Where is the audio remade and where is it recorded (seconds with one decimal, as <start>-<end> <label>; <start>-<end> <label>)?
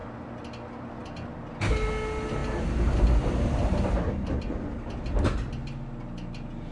0.0-6.7 recorded